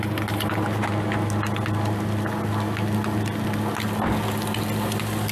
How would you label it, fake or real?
real